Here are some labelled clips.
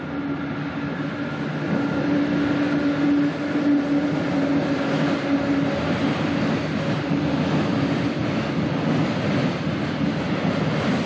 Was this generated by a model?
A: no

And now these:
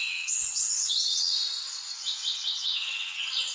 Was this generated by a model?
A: yes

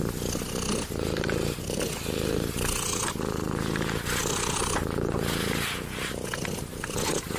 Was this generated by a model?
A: no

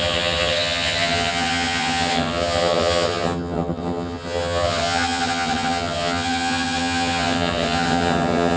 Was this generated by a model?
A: yes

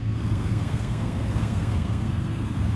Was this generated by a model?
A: yes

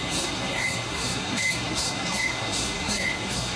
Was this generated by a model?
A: yes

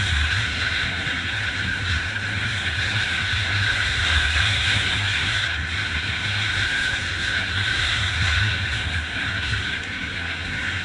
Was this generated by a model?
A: yes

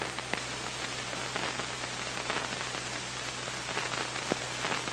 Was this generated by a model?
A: no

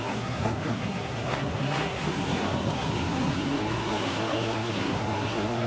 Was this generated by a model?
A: yes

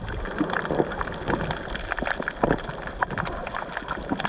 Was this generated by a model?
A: no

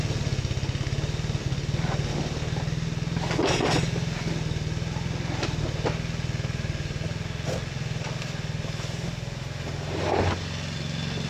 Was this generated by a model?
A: no